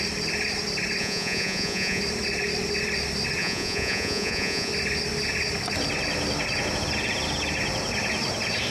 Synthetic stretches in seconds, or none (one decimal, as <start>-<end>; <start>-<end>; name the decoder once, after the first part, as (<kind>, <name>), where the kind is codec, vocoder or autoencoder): 1.0-2.0 (vocoder, Vocos); 3.4-4.7